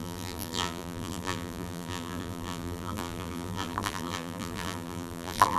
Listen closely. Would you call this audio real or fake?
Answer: fake